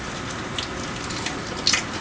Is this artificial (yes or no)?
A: no